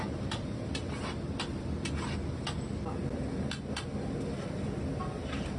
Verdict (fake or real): real